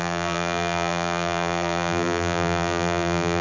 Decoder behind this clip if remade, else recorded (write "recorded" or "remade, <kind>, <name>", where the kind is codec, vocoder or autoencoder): remade, vocoder, BigVGAN v2